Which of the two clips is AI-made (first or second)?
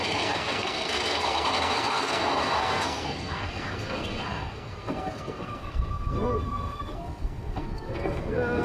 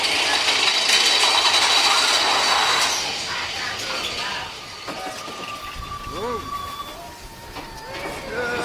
first